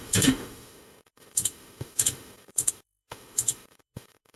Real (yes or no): no